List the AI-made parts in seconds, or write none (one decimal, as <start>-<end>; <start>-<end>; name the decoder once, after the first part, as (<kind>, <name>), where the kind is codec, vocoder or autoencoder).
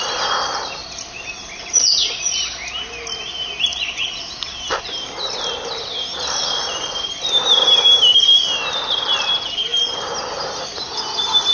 0.0-9.7 (vocoder, BigVGAN v2); 11.0-11.5